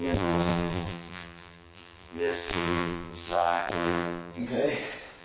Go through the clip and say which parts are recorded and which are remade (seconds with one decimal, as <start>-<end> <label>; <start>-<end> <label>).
0.0-4.4 remade; 4.4-5.2 recorded

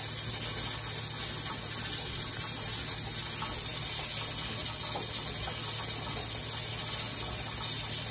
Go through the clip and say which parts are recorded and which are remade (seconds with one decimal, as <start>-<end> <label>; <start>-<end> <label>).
0.0-8.1 recorded

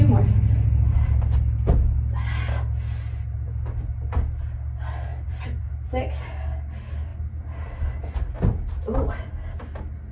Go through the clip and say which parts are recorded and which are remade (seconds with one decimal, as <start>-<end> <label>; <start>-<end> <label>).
0.0-5.1 recorded; 5.1-5.9 remade; 5.9-10.1 recorded

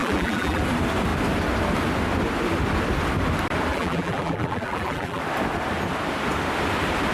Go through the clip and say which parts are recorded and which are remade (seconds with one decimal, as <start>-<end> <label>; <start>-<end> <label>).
0.0-0.6 remade; 0.6-3.7 recorded; 3.7-5.2 remade; 5.2-7.1 recorded

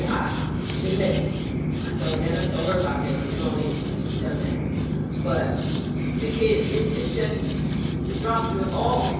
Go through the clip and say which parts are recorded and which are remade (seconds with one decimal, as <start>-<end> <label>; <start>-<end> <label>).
0.0-9.2 recorded

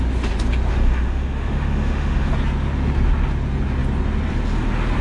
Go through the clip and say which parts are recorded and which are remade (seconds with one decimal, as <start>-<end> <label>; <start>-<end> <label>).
0.0-0.7 recorded; 0.7-2.3 remade; 2.3-5.0 recorded

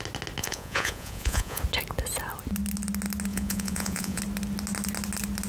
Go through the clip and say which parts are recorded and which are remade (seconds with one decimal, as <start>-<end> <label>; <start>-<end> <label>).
0.0-0.4 recorded; 0.4-1.6 remade; 1.6-3.3 recorded; 3.3-4.2 remade; 4.2-5.5 recorded

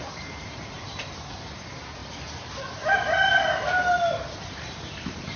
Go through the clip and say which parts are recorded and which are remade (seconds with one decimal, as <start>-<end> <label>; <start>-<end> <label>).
0.0-2.0 remade; 2.0-4.4 recorded; 4.4-5.4 remade